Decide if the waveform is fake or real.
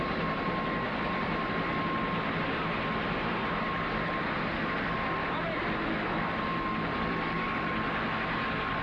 real